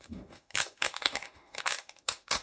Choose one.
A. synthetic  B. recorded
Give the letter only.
A